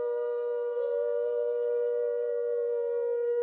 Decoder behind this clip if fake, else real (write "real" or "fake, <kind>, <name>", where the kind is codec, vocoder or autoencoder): fake, codec, DAC